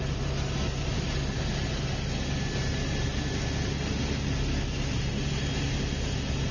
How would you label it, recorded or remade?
recorded